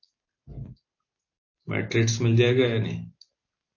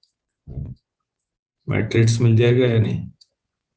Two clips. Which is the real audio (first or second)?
first